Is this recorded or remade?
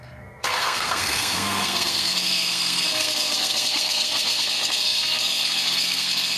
remade